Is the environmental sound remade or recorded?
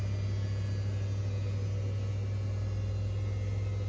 recorded